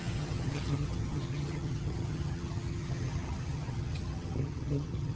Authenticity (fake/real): fake